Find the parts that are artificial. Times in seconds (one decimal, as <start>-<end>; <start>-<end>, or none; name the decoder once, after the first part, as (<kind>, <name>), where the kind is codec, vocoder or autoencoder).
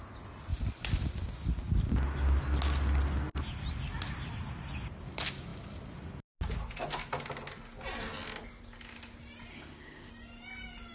9.5-10.1 (autoencoder, DAC-VAE)